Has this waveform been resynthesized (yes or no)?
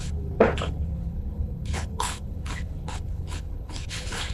yes